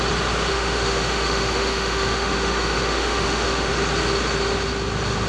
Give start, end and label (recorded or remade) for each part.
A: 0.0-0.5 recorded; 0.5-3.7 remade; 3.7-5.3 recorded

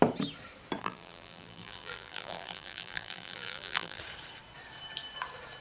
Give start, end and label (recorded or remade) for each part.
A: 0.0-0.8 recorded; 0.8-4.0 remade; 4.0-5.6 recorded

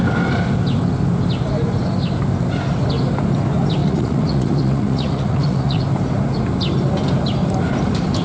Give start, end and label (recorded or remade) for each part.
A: 0.0-3.8 recorded; 3.8-5.8 remade; 5.8-8.2 recorded

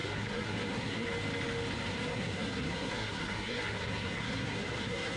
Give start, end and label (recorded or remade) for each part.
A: 0.0-1.1 remade; 1.1-1.9 recorded; 1.9-5.2 remade

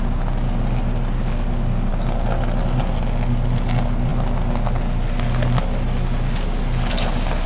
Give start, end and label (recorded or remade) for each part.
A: 0.0-7.5 recorded

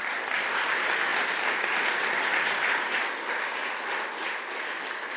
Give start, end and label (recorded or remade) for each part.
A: 0.0-5.2 recorded

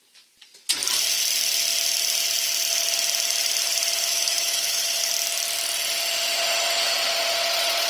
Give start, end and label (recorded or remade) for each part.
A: 0.0-4.1 recorded; 4.1-5.1 remade; 5.1-7.9 recorded

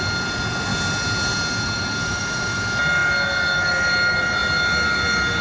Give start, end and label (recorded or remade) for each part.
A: 0.0-5.4 recorded